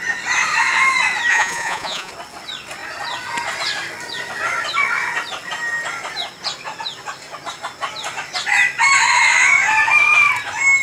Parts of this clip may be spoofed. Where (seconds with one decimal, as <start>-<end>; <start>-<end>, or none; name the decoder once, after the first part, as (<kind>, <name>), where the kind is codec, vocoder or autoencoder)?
1.3-2.1 (vocoder, Vocos)